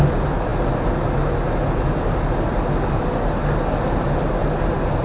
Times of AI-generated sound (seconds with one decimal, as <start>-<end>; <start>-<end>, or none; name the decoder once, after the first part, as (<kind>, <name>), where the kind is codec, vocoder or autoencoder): none